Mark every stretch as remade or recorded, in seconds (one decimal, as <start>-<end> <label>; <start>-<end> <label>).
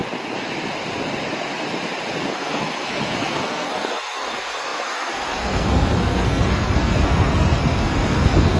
0.0-2.3 recorded; 2.3-8.6 remade